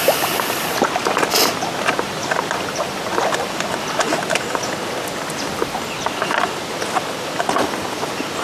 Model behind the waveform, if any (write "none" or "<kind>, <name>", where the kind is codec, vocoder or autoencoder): none